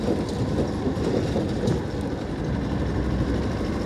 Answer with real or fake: real